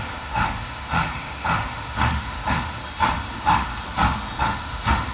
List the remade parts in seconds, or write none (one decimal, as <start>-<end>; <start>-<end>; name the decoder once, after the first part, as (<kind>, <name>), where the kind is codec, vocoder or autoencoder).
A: 0.0-2.8 (autoencoder, DAC-VAE); 3.3-3.7; 4.4-5.1